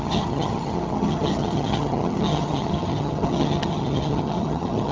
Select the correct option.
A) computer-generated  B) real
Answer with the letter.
A